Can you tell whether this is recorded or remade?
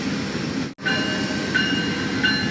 recorded